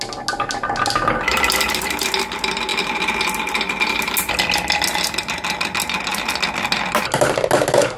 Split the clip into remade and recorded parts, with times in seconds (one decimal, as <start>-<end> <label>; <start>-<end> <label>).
0.0-8.0 recorded